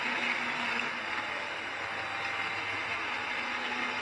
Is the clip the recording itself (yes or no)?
yes